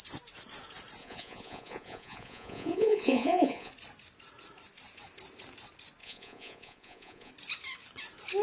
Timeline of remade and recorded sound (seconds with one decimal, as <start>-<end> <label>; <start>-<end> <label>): 0.0-1.0 recorded; 1.0-3.7 remade; 3.7-6.0 recorded; 6.0-7.3 remade; 7.3-8.4 recorded